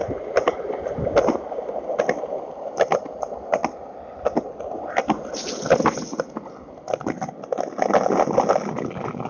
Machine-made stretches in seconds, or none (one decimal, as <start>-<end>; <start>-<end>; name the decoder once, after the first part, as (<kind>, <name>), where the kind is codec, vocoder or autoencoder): none